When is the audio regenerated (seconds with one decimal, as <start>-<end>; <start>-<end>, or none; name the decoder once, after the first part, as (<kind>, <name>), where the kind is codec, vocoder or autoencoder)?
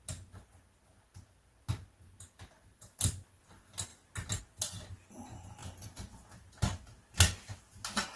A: none